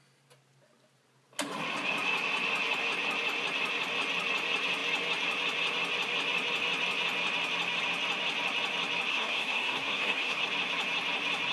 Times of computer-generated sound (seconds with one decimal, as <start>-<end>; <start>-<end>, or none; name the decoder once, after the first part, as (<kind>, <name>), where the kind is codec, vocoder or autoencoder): 9.1-10.4 (codec, SNAC)